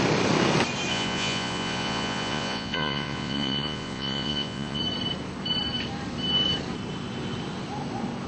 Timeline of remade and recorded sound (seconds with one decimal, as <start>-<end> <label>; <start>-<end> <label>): 0.0-0.9 recorded; 0.9-4.8 remade; 4.8-8.3 recorded